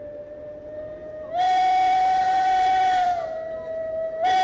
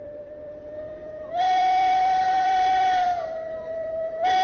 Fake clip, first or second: second